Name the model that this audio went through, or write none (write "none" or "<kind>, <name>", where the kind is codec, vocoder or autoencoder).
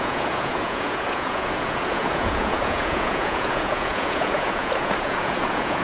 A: vocoder, Vocos